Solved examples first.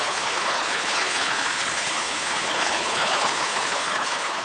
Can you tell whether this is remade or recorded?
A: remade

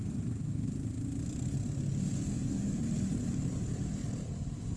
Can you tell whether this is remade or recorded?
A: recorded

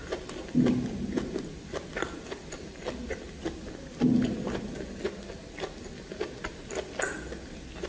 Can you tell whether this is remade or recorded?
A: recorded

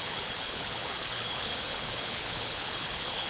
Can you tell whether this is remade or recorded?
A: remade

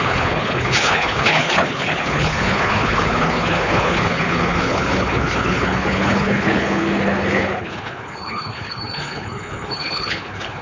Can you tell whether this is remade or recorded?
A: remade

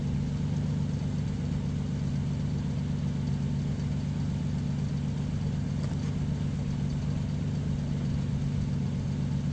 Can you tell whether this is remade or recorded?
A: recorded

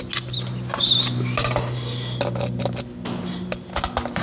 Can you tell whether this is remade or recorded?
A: recorded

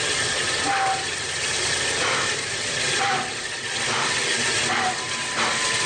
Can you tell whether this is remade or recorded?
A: recorded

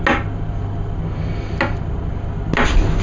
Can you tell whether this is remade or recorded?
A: recorded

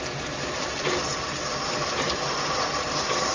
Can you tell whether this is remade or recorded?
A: recorded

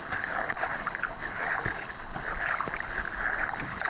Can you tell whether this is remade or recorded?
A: remade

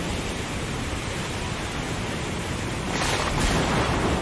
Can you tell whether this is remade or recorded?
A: recorded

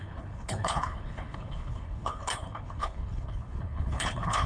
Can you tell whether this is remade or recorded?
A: remade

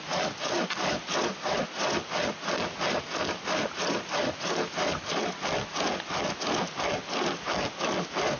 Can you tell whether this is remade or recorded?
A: recorded